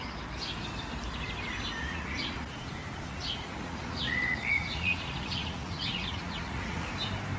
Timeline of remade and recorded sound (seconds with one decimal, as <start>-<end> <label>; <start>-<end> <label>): 0.0-1.8 recorded; 1.8-2.7 remade; 2.7-3.1 recorded; 3.1-6.9 remade; 6.9-7.4 recorded